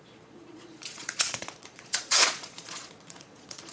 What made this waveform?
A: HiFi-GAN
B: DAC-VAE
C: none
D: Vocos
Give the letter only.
D